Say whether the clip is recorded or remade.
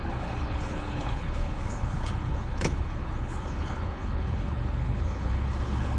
remade